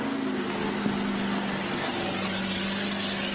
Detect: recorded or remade recorded